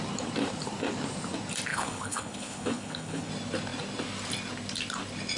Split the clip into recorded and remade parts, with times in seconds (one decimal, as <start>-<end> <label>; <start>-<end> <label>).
0.0-1.7 recorded; 1.7-3.3 remade; 3.3-5.4 recorded